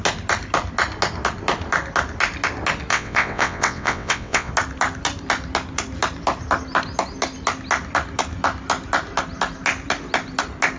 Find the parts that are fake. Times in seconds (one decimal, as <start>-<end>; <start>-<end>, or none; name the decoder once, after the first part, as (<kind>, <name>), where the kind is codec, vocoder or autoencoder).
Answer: 2.9-4.5 (vocoder, WaveNeXt)

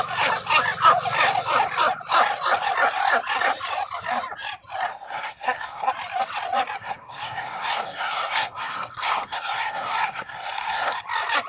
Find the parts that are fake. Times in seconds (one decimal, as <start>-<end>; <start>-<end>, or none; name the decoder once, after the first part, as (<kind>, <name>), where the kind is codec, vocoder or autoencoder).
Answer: 4.9-5.9 (codec, SNAC); 6.8-11.0

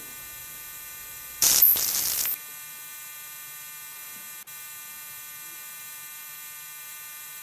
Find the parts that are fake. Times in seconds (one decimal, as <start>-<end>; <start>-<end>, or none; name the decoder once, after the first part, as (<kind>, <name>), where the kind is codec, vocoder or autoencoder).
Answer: 0.4-1.9 (vocoder, BigVGAN v2)

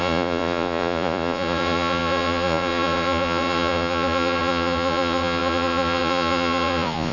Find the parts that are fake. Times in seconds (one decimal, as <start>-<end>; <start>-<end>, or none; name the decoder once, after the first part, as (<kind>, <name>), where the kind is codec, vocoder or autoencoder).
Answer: 0.0-7.1 (vocoder, Vocos)

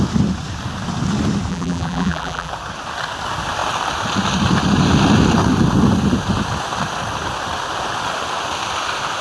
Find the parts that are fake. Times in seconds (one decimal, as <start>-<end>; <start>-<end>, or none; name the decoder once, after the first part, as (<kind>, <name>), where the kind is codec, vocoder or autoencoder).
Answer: 1.5-2.5 (vocoder, BigVGAN v2)

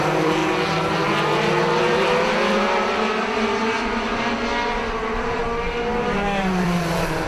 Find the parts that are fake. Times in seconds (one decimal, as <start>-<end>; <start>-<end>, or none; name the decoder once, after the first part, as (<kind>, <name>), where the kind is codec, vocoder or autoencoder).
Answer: 0.0-0.4 (vocoder, BigVGAN v2); 4.8-7.3